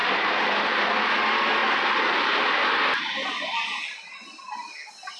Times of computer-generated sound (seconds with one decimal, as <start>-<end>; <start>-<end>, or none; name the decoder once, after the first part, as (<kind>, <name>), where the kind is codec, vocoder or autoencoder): 0.0-1.0 (vocoder, BigVGAN v2)